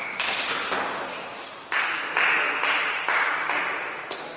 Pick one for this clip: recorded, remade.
recorded